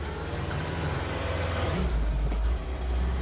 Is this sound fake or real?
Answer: real